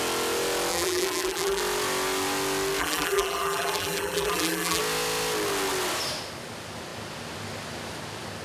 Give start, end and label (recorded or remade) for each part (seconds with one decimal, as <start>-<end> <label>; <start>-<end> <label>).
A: 0.0-0.7 recorded; 0.7-1.6 remade; 1.6-2.8 recorded; 2.8-4.8 remade; 4.8-8.4 recorded